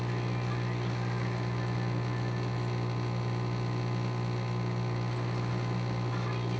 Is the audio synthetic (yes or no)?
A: no